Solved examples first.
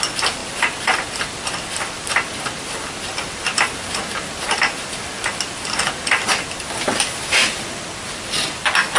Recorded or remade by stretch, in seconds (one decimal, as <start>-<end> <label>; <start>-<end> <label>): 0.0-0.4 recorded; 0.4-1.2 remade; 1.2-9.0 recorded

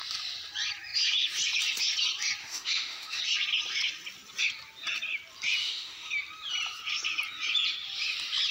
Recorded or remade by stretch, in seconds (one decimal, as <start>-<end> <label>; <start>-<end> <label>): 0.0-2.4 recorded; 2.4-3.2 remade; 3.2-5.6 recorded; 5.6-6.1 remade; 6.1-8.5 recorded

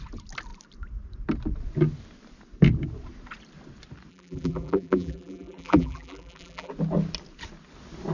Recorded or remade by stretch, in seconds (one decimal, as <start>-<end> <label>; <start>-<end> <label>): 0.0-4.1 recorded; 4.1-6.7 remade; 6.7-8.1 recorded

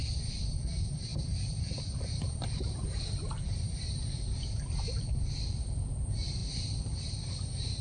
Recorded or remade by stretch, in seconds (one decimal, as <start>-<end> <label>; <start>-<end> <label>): 0.0-7.8 remade